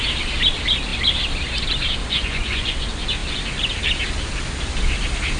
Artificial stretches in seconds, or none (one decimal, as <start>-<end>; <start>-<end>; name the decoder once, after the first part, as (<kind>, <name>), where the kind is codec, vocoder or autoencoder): 2.0-2.7 (vocoder, Vocos)